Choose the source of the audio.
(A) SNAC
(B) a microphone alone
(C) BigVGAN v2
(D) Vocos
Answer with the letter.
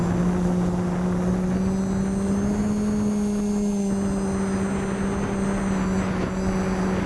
B